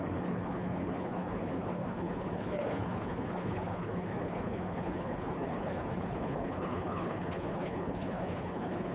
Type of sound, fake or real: fake